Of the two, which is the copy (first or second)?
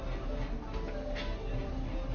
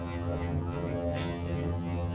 second